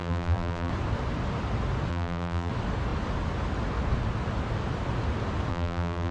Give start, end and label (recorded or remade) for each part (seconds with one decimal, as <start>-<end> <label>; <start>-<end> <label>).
0.0-0.7 remade; 0.7-1.9 recorded; 1.9-2.5 remade; 2.5-5.5 recorded; 5.5-6.1 remade